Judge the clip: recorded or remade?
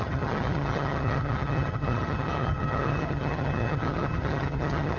remade